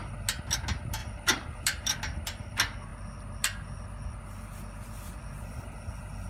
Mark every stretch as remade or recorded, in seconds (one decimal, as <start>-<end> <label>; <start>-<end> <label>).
0.0-1.0 recorded; 1.0-2.0 remade; 2.0-6.3 recorded